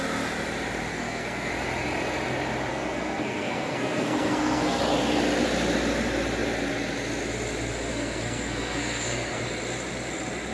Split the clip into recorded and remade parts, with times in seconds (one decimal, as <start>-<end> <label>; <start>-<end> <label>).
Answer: 0.0-0.9 recorded; 0.9-1.5 remade; 1.5-2.7 recorded; 2.7-4.8 remade; 4.8-7.9 recorded; 7.9-9.4 remade; 9.4-10.5 recorded

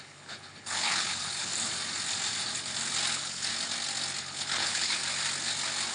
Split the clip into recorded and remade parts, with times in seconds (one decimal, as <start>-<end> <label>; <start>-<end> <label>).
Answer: 0.0-1.5 remade; 1.5-3.1 recorded; 3.1-3.5 remade; 3.5-4.2 recorded; 4.2-5.0 remade; 5.0-5.9 recorded

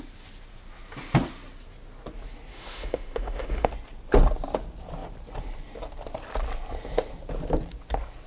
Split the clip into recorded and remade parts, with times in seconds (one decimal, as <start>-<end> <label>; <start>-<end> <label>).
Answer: 0.0-2.5 recorded; 2.5-3.7 remade; 3.7-8.3 recorded

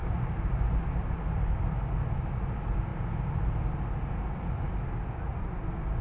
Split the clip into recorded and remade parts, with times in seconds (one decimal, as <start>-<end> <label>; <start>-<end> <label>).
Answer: 0.0-6.0 recorded

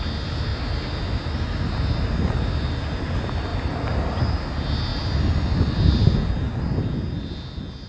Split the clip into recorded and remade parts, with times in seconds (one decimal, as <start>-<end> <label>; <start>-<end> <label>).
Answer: 0.0-7.9 recorded